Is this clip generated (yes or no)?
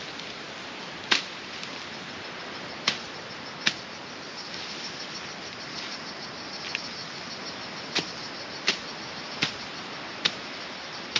no